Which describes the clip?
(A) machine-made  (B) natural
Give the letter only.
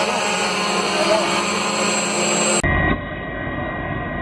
B